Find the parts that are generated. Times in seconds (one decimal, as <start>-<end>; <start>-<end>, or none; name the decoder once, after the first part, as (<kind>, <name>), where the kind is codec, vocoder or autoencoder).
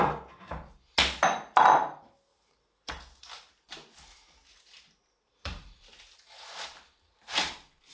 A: 2.3-2.9 (vocoder, BigVGAN v2); 5.0-5.9